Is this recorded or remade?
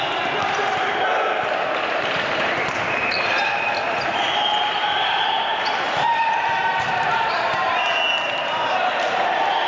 remade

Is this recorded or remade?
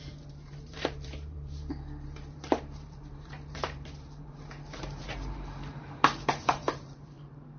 remade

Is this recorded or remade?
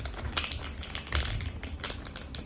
recorded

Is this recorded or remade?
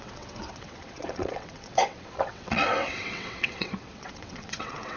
remade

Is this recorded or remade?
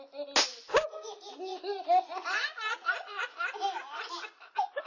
recorded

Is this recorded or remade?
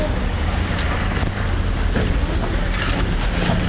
recorded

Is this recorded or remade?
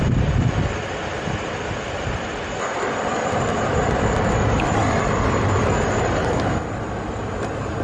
recorded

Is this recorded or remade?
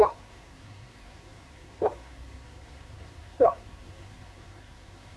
remade